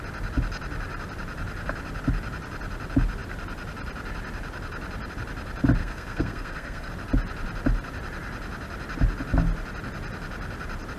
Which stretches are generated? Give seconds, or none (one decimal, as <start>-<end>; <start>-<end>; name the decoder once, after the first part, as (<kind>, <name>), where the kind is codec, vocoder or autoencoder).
5.8-6.9 (codec, SNAC)